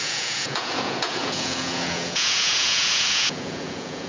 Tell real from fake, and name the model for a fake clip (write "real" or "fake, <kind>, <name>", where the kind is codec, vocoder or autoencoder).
fake, vocoder, Vocos